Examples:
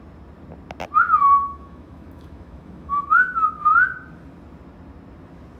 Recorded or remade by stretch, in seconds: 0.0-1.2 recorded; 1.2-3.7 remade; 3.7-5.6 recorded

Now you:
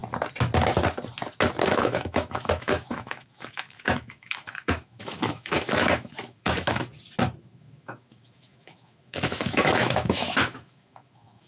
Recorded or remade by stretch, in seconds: 0.0-1.6 recorded; 1.6-6.9 remade; 6.9-7.4 recorded; 7.4-11.5 remade